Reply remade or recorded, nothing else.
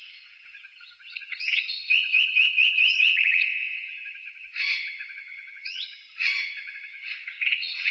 remade